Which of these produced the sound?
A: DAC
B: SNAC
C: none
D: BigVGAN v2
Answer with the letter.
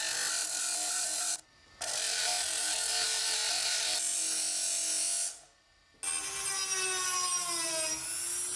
C